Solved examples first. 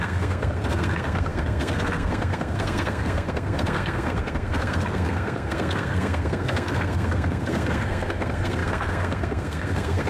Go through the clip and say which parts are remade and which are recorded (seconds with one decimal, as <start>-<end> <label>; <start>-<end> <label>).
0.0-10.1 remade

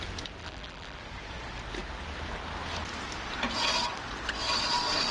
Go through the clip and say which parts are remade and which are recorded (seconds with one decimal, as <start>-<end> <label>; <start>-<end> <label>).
0.0-0.4 recorded; 0.4-1.0 remade; 1.0-5.1 recorded

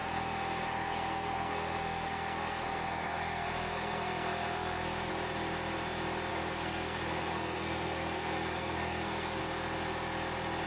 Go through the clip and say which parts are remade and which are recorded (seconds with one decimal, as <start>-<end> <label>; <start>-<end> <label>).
0.0-5.1 remade; 5.1-6.3 recorded; 6.3-9.4 remade; 9.4-10.7 recorded

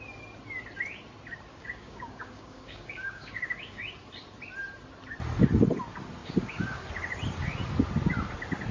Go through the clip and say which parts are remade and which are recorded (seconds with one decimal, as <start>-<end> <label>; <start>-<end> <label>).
0.0-1.5 recorded; 1.5-3.8 remade; 3.8-6.2 recorded; 6.2-6.9 remade; 6.9-8.7 recorded